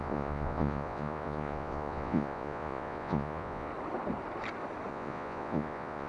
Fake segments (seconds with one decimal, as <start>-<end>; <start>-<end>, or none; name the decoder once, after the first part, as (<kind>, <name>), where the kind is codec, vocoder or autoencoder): 0.0-3.7 (vocoder, Vocos); 4.9-6.1